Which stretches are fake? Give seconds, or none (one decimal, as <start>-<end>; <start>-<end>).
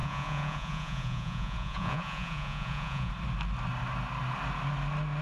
0.0-3.1